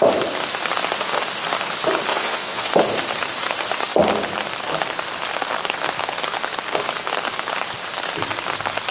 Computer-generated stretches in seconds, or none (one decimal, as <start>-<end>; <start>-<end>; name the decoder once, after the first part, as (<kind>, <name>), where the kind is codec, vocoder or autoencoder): 2.1-2.7 (vocoder, Vocos)